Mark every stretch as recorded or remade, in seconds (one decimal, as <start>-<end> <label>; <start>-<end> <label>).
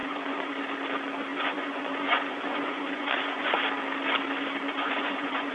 0.0-0.5 remade; 0.5-1.3 recorded; 1.3-3.6 remade; 3.6-4.7 recorded; 4.7-5.5 remade